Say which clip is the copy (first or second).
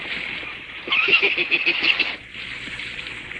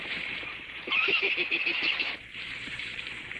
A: second